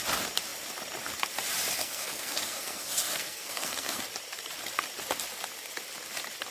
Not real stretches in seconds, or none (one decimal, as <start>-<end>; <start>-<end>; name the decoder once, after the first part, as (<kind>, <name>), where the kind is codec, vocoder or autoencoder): 1.8-4.0 (codec, SNAC)